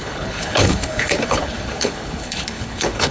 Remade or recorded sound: remade